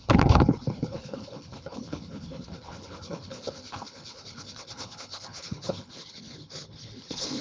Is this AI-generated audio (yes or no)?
yes